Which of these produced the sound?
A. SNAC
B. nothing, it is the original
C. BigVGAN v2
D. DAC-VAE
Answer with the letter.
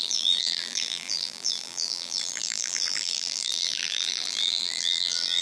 C